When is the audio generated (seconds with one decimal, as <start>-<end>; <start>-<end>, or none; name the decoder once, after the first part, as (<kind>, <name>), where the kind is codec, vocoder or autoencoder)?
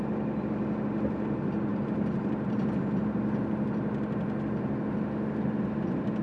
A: none